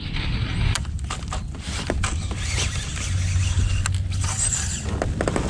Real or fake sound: real